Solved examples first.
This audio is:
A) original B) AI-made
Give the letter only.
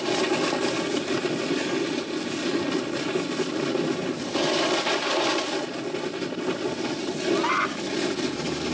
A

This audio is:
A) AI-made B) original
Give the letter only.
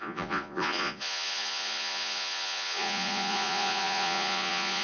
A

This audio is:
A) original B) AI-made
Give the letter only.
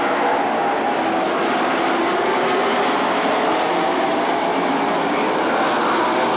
A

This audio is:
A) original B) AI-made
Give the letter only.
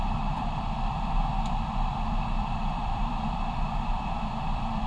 B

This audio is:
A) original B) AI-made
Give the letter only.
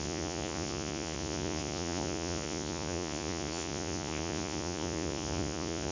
B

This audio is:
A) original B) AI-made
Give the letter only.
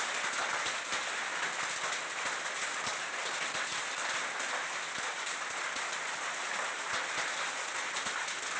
A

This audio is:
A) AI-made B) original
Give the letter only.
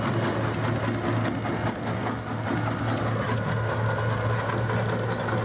B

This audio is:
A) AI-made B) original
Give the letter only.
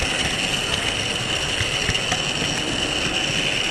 B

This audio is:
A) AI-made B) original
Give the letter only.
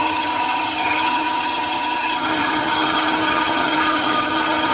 A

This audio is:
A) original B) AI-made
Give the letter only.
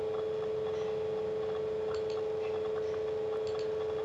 A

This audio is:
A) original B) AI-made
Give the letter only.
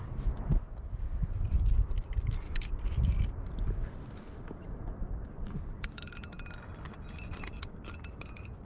A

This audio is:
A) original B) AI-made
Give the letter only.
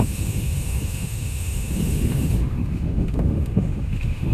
B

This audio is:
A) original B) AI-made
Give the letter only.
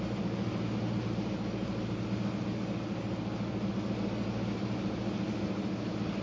A